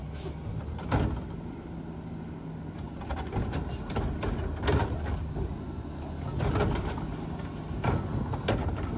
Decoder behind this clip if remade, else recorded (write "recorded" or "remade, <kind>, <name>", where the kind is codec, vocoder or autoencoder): recorded